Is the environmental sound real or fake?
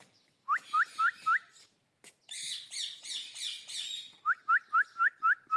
real